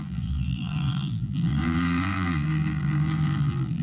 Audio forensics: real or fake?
fake